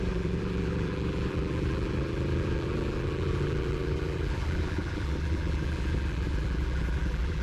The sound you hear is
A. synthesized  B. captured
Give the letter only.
A